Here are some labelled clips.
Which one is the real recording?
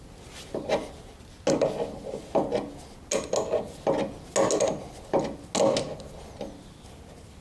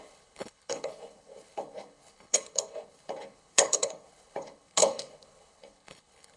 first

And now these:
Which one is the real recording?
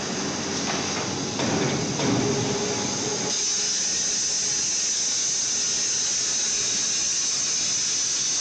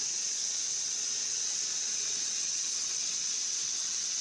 first